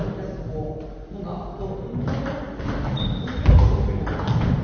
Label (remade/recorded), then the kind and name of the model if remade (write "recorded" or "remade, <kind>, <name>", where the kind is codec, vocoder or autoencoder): recorded